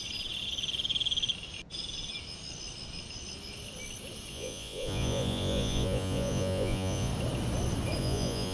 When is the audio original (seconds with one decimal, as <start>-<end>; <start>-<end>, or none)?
0.0-4.3; 7.1-8.0